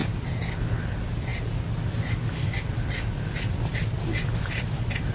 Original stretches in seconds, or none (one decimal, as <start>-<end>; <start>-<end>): 0.0-5.1